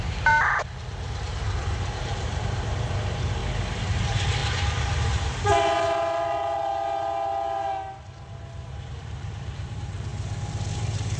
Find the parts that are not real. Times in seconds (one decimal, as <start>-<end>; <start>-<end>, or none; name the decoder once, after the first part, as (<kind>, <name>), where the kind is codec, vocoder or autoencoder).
0.0-3.4 (vocoder, BigVGAN v2); 4.0-6.6; 9.0-10.1; 10.7-11.2